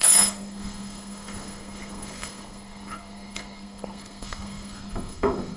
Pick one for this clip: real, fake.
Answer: fake